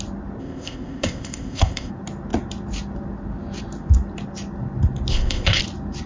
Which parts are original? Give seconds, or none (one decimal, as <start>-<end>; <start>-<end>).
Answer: 0.0-0.4; 1.9-5.1; 5.6-6.1